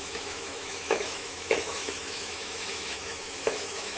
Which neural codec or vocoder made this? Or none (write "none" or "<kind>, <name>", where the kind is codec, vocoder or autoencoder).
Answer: autoencoder, DAC-VAE